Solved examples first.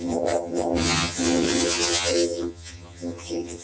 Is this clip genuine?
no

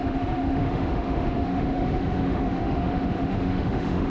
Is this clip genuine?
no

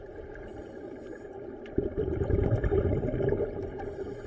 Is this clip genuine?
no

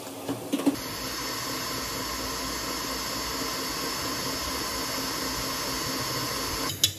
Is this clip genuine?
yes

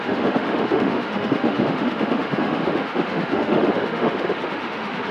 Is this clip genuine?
no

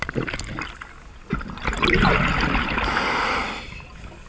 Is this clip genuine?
yes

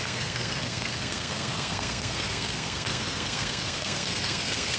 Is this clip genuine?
no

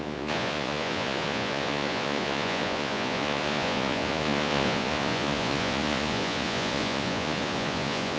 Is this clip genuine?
no